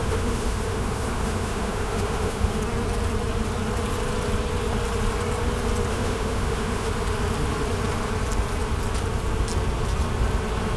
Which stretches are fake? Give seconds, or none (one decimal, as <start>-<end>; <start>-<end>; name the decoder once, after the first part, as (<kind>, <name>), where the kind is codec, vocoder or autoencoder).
0.0-2.6 (autoencoder, DAC-VAE); 5.9-6.9